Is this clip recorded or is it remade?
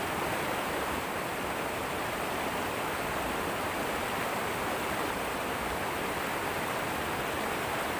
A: recorded